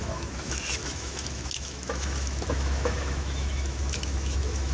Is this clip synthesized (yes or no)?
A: yes